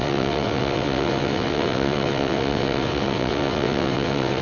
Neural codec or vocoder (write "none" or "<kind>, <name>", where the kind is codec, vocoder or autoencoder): vocoder, WaveNeXt